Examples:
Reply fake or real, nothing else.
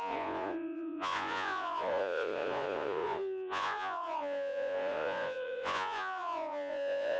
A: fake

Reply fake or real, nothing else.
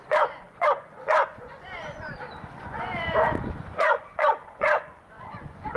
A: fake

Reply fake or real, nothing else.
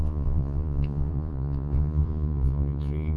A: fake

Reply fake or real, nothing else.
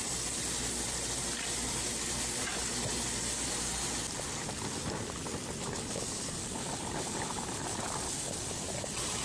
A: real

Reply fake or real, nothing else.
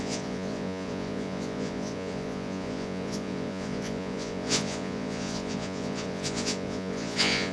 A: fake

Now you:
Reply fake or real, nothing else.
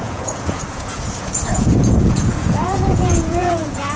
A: fake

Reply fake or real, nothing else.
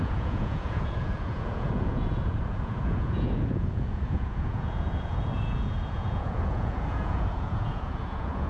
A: fake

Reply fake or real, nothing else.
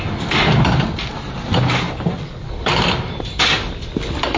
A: real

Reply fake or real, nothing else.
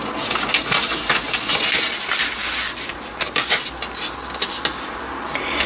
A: real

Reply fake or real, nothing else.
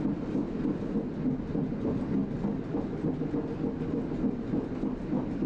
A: real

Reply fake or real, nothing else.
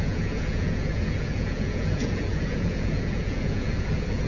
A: fake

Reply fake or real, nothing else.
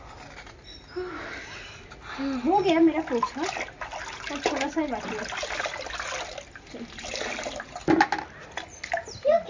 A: real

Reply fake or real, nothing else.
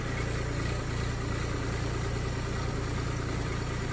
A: real